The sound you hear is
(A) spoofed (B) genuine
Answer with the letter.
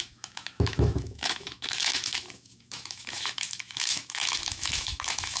A